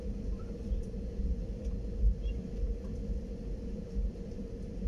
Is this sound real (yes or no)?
yes